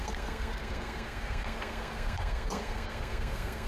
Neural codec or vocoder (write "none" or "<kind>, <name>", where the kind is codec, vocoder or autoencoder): codec, SNAC